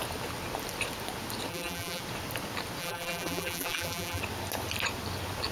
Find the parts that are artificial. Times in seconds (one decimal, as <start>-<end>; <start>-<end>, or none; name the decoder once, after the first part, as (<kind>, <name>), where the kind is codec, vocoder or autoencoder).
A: 1.5-2.0 (vocoder, BigVGAN v2); 2.8-4.2